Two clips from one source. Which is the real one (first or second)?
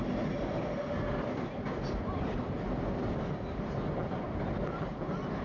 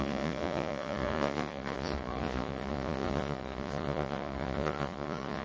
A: first